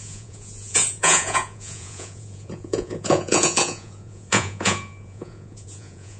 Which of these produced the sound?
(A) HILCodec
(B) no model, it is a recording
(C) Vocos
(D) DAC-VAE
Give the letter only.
C